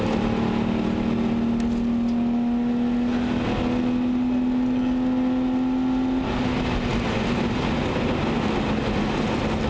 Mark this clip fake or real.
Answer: real